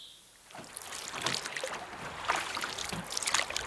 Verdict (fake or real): real